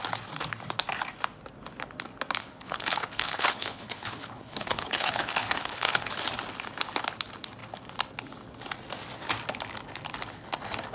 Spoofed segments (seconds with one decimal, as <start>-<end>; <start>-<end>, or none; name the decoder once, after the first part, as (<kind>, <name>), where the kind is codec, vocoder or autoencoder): 2.4-6.1 (codec, HILCodec)